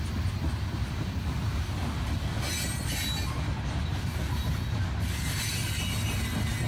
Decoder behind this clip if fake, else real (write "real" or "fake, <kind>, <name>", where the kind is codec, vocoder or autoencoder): real